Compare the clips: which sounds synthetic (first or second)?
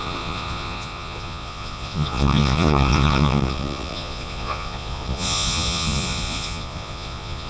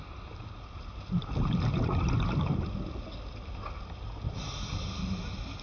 first